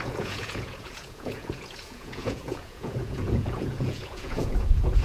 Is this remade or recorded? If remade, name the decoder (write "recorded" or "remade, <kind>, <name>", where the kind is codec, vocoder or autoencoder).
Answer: remade, vocoder, Vocos